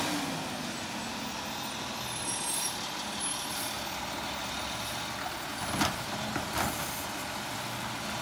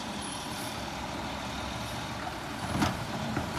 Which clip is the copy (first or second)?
second